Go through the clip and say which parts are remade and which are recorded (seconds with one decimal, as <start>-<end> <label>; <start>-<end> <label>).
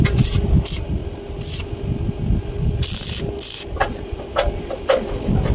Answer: 0.0-5.5 recorded